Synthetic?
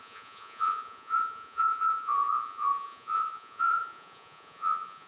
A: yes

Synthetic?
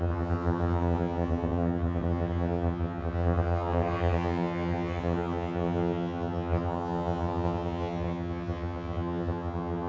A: yes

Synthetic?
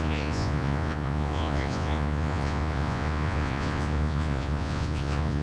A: yes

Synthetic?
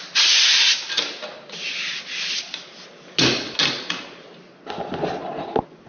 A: no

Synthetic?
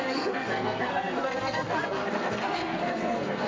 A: yes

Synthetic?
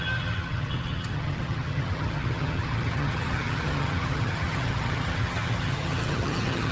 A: yes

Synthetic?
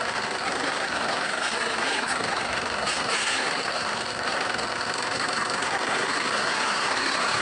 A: yes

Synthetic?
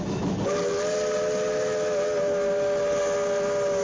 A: no